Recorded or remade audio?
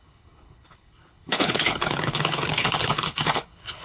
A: remade